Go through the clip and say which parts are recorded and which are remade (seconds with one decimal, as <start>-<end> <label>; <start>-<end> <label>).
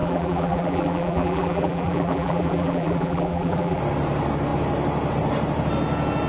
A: 0.0-3.8 remade; 3.8-6.3 recorded